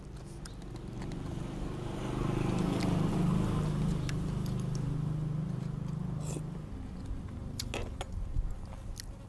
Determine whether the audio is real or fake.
real